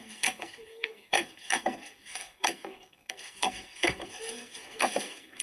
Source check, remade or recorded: remade